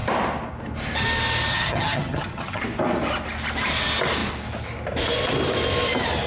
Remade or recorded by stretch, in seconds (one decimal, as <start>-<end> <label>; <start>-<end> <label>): 0.0-1.5 recorded; 1.5-2.6 remade; 2.6-6.3 recorded